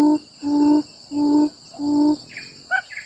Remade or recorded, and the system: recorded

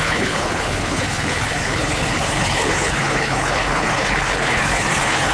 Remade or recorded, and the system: remade, codec, HILCodec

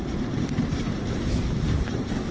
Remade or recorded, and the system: recorded